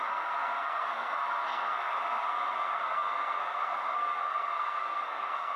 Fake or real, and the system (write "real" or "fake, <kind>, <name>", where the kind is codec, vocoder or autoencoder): fake, codec, SNAC